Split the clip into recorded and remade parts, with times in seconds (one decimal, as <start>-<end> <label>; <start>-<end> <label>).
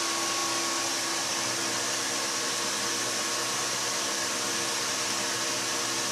0.0-6.1 recorded